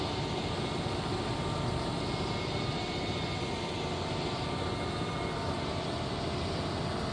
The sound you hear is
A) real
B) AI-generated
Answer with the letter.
A